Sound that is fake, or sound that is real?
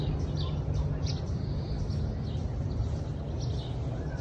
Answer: real